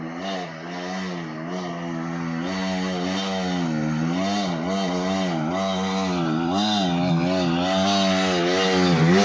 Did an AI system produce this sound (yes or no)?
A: no